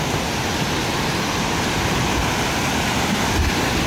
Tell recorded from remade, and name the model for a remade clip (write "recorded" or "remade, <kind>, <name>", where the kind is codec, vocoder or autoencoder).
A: recorded